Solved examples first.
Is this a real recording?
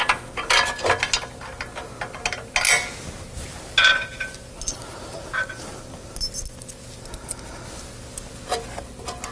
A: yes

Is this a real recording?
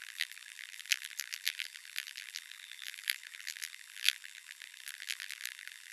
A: no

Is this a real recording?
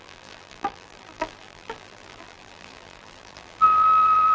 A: no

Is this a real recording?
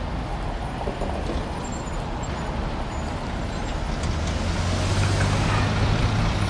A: yes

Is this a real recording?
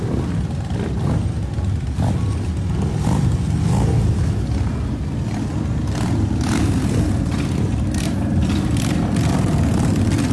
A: yes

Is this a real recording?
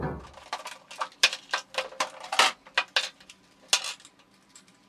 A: yes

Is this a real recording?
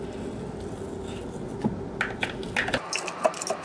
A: yes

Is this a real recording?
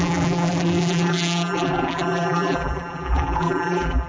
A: no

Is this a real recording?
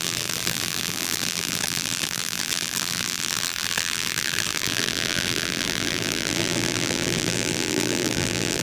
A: no